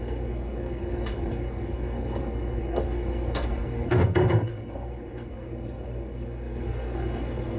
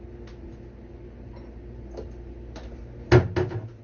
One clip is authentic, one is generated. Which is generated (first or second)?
first